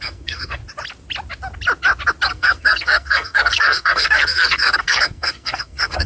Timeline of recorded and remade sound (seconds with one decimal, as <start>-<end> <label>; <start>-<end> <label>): 0.0-0.6 remade; 0.6-2.3 recorded; 2.3-6.1 remade